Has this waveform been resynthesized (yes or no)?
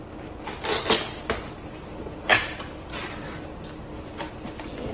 no